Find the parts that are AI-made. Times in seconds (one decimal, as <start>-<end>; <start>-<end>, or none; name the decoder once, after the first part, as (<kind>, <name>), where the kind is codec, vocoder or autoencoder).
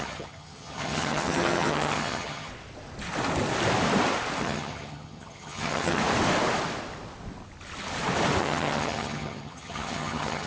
0.0-2.5 (vocoder, HiFi-GAN); 4.4-6.0; 8.4-10.5